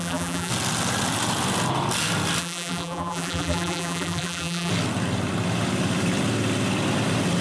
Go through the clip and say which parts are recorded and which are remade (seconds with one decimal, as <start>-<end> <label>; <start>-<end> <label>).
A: 0.0-0.5 remade; 0.5-2.4 recorded; 2.4-4.7 remade; 4.7-7.4 recorded